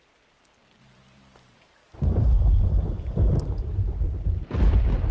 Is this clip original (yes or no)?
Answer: yes